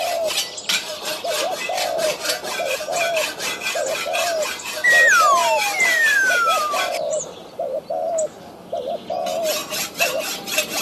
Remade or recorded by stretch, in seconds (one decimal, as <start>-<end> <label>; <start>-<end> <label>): 0.0-5.4 recorded; 5.4-7.8 remade; 7.8-9.6 recorded; 9.6-10.8 remade